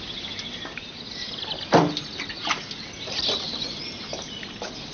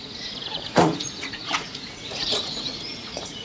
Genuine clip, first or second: first